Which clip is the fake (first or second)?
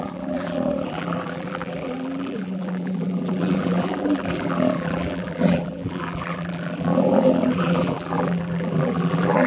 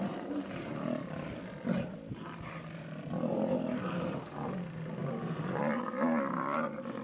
first